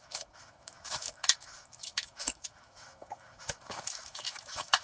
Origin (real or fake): fake